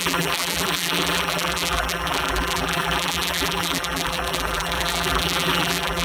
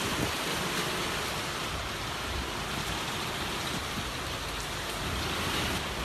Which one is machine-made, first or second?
first